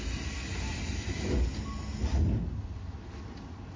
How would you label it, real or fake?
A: real